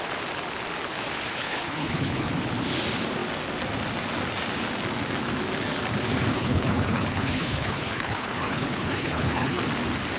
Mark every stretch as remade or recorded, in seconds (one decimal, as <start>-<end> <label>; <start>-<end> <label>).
0.0-1.3 recorded; 1.3-2.3 remade; 2.3-6.3 recorded; 6.3-9.6 remade; 9.6-10.2 recorded